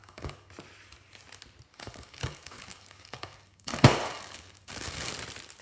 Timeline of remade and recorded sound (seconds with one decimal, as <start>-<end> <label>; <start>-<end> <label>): 0.0-0.5 remade; 0.5-1.7 recorded; 1.7-5.1 remade; 5.1-5.6 recorded